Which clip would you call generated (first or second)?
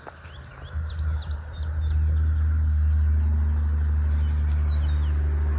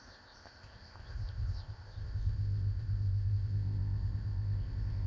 second